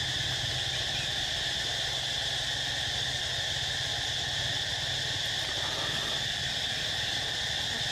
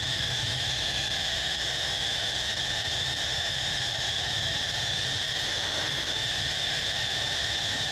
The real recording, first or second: first